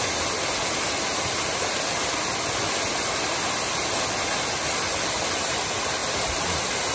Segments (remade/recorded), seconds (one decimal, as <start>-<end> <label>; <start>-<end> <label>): 0.0-6.9 recorded